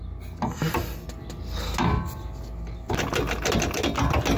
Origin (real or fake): real